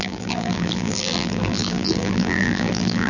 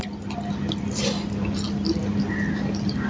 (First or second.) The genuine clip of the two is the second